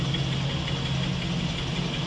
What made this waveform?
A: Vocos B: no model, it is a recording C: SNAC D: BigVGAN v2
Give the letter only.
B